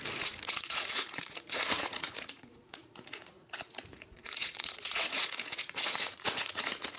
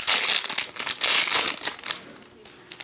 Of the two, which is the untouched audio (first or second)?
second